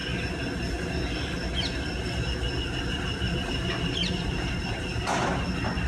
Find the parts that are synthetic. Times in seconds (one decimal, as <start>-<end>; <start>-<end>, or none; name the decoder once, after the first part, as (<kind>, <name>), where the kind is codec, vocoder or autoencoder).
none